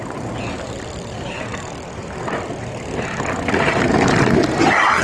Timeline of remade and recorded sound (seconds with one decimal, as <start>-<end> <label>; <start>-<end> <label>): 0.0-5.0 recorded